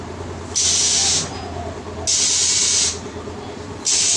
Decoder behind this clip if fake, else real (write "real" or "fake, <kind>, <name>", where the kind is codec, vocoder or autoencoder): real